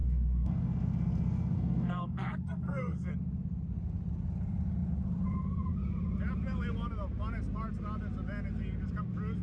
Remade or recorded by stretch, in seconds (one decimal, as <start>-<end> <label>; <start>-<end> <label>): 0.0-3.1 remade; 3.1-9.4 recorded